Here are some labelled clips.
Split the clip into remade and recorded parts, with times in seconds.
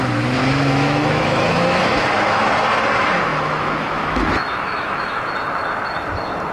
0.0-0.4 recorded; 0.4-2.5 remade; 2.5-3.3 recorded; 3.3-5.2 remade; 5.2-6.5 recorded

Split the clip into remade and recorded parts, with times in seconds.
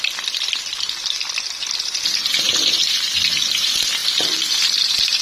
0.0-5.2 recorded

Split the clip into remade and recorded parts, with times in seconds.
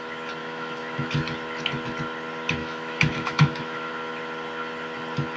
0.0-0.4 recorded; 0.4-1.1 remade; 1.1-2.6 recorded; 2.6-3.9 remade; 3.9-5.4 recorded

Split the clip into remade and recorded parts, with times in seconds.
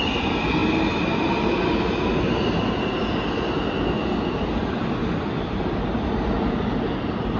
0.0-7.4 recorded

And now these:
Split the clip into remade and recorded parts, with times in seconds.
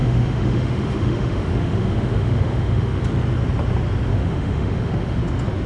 0.0-3.0 remade; 3.0-4.1 recorded; 4.1-5.2 remade; 5.2-5.7 recorded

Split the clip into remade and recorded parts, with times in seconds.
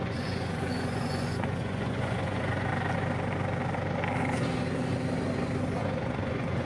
0.0-2.7 remade; 2.7-5.8 recorded; 5.8-6.6 remade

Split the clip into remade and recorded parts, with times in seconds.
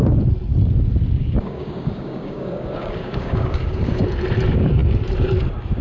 0.0-1.2 recorded; 1.2-4.0 remade; 4.0-5.8 recorded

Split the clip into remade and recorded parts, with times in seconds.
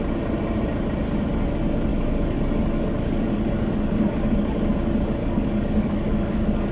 0.0-1.9 recorded; 1.9-4.6 remade; 4.6-5.2 recorded; 5.2-6.7 remade